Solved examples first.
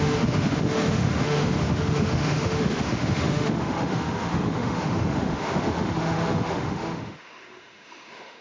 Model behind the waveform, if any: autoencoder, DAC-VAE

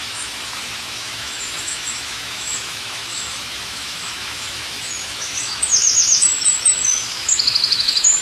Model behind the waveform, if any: autoencoder, DAC-VAE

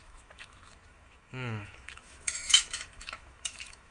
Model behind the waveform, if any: autoencoder, DAC-VAE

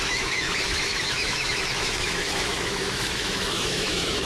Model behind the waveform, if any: autoencoder, DAC-VAE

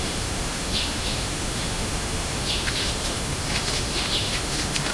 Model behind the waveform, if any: autoencoder, DAC-VAE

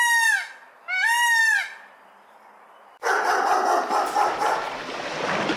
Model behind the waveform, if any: none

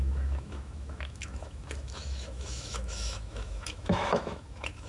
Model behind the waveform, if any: autoencoder, DAC-VAE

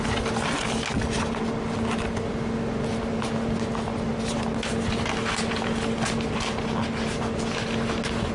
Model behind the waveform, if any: none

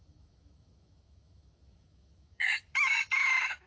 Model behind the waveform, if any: autoencoder, DAC-VAE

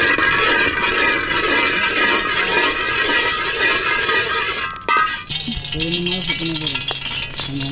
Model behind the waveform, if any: none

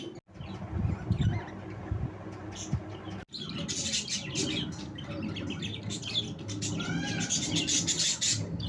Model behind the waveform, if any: none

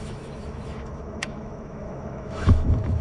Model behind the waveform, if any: autoencoder, DAC-VAE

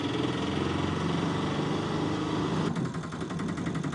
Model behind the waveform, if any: none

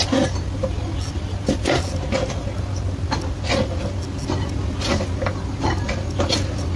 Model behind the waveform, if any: none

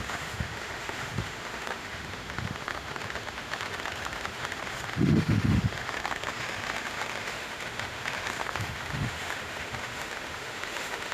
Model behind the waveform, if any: autoencoder, DAC-VAE